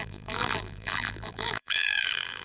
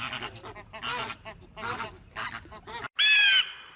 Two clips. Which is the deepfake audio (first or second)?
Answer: first